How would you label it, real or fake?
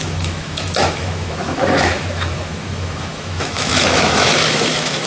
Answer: fake